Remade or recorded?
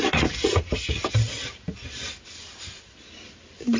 recorded